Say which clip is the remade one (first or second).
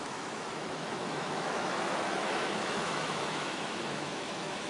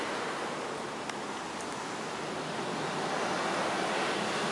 first